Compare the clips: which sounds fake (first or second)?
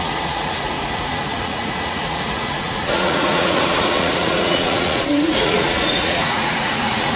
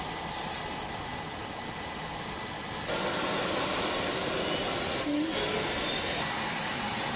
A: first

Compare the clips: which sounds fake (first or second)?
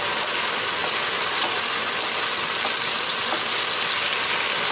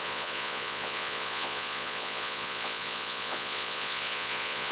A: second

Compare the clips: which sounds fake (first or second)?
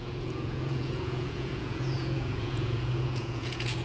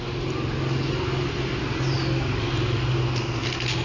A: first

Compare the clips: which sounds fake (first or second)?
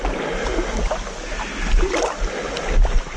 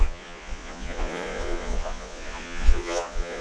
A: second